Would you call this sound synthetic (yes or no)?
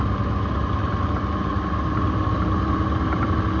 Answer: no